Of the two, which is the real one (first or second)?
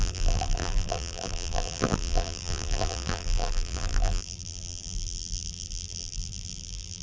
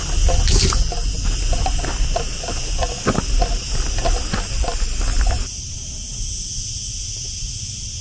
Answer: second